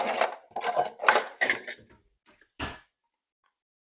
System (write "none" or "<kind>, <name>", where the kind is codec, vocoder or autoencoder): none